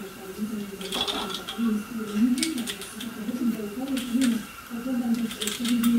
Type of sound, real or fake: real